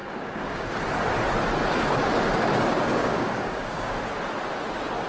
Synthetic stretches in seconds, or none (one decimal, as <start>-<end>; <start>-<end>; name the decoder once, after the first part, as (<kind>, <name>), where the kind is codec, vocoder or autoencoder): 0.0-0.7 (codec, DAC); 3.0-4.0